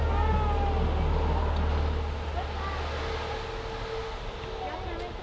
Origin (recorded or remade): recorded